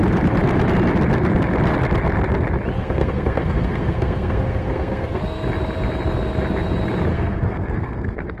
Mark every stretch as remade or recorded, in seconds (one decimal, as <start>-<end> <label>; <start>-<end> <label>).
0.0-2.8 recorded; 2.8-5.2 remade; 5.2-7.1 recorded; 7.1-8.4 remade